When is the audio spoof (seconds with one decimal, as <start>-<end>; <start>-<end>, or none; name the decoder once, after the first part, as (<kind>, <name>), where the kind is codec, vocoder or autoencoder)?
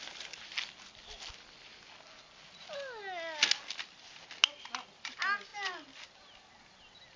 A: none